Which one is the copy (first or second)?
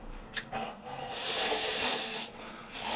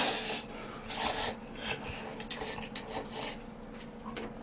first